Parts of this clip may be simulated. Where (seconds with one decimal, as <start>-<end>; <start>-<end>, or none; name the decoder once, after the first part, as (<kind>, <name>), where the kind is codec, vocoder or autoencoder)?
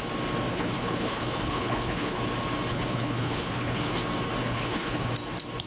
0.5-2.2 (codec, HILCodec); 2.7-3.9; 4.4-5.1